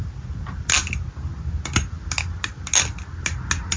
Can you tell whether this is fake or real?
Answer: real